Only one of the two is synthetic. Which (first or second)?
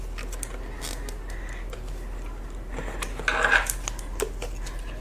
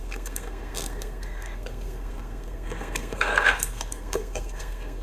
second